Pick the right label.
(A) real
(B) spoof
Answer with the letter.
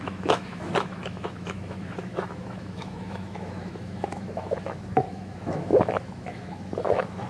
B